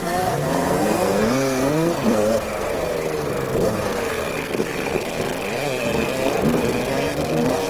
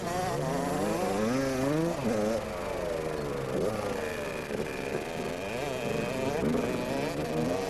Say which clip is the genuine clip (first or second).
second